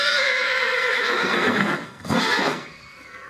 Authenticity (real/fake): fake